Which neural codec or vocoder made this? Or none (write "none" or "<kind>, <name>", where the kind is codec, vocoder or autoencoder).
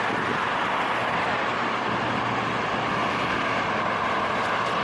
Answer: none